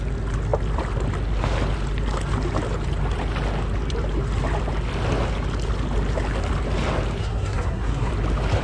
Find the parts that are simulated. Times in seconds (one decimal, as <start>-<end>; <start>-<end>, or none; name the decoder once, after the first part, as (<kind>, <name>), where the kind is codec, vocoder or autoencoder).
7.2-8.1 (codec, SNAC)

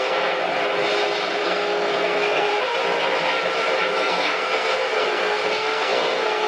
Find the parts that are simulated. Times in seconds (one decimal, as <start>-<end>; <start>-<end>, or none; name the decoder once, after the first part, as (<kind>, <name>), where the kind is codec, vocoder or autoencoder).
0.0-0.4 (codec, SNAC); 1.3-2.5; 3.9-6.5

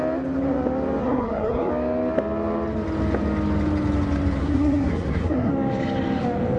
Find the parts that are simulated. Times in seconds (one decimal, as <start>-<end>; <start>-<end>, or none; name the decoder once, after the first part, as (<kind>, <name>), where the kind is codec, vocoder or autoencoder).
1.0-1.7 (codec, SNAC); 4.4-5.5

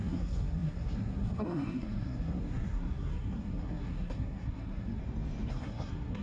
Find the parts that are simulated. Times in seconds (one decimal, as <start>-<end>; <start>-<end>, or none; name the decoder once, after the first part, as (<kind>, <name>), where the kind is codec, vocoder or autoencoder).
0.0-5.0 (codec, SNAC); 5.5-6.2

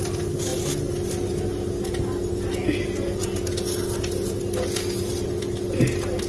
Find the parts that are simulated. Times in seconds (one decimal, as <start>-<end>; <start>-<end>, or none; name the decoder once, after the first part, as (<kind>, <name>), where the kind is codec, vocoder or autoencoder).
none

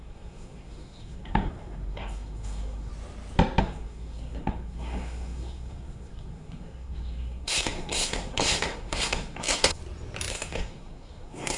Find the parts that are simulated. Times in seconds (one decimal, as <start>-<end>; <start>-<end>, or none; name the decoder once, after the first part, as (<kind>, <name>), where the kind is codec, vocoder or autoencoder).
0.0-2.9 (codec, SNAC); 3.6-9.8; 10.3-11.6

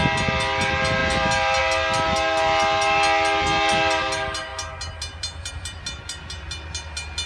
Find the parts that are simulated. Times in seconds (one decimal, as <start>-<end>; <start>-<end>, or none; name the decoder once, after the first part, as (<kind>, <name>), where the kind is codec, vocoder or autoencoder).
none